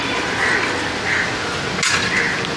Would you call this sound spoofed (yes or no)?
no